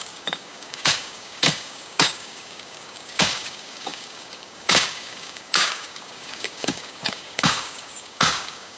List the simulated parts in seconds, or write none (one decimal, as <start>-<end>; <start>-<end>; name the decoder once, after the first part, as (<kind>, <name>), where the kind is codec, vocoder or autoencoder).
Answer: 0.0-8.8 (codec, DAC)